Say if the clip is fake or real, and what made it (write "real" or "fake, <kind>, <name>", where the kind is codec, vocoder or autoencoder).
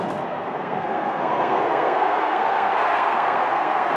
fake, codec, SNAC